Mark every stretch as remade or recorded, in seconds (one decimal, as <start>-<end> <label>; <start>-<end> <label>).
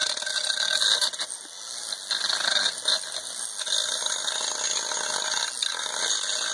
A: 0.0-6.5 recorded